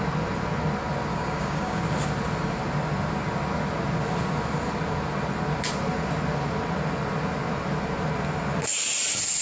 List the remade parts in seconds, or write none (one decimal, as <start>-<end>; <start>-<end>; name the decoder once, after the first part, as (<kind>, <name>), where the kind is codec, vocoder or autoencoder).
1.1-1.8 (codec, DAC)